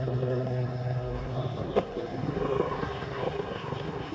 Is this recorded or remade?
remade